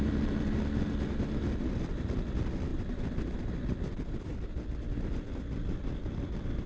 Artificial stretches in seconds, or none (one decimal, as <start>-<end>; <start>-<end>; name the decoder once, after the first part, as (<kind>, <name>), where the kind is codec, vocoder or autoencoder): 2.7-6.7 (vocoder, BigVGAN v2)